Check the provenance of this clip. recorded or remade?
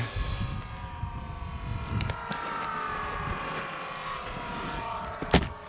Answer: recorded